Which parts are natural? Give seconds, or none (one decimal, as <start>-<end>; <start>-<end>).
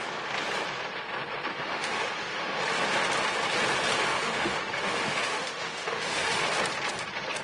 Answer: 0.0-1.5; 2.6-4.1; 6.4-7.4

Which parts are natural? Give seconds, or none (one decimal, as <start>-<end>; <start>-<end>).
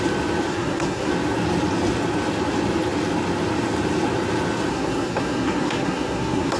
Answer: 0.0-0.5; 1.1-4.7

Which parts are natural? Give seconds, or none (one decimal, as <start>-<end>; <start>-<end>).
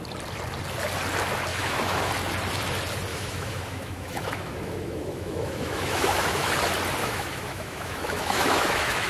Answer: 0.0-1.5; 2.1-3.1; 6.5-7.0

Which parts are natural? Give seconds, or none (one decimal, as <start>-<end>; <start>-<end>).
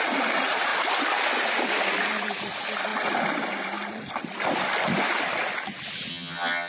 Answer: 0.0-6.1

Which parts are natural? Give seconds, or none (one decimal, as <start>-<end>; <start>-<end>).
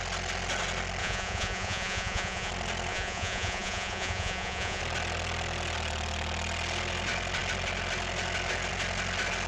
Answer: 0.0-1.0; 2.5-2.9; 4.8-9.5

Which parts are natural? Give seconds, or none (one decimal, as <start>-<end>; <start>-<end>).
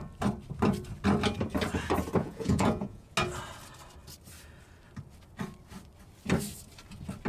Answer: 0.0-2.2; 3.1-7.3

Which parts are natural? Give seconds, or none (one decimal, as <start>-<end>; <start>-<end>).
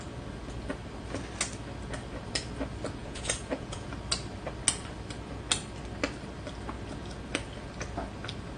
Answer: 0.0-3.0; 3.9-8.6